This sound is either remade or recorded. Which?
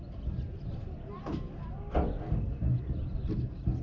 recorded